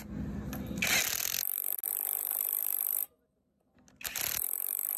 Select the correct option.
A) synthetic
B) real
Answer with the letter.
B